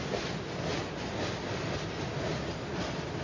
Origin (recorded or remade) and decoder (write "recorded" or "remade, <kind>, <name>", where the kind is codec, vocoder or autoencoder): recorded